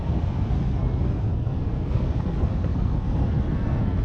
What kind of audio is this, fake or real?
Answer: fake